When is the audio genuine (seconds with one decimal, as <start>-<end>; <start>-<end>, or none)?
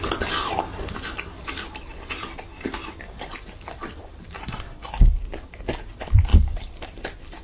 0.0-4.4; 4.9-7.4